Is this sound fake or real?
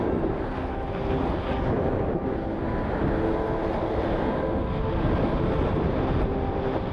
real